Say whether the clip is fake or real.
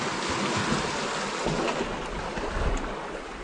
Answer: real